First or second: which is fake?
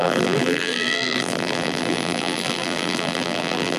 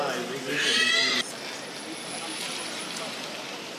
first